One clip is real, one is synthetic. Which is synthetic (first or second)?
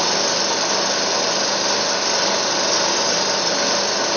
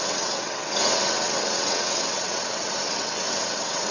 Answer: second